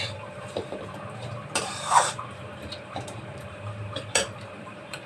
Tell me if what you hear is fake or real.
fake